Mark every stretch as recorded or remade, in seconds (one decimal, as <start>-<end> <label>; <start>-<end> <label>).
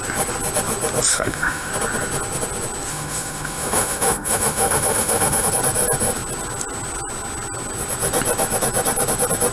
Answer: 0.0-1.1 recorded; 1.1-1.7 remade; 1.7-2.9 recorded; 2.9-5.5 remade; 5.5-9.5 recorded